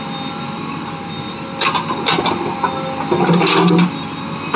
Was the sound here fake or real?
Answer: real